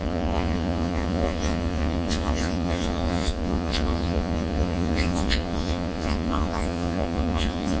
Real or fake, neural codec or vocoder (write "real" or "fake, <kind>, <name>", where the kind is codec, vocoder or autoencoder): fake, vocoder, Vocos